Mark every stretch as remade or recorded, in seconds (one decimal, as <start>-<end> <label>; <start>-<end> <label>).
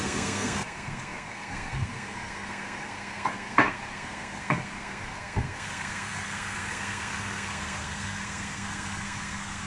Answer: 0.0-9.7 remade